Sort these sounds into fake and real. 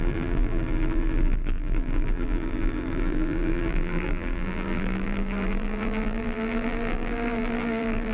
fake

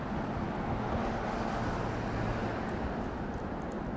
real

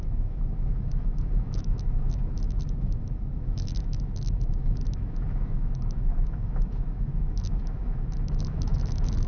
fake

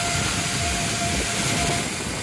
real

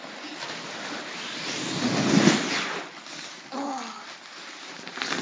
real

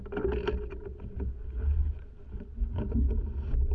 real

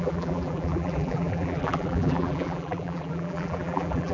fake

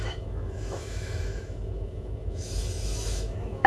fake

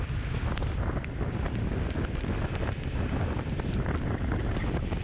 real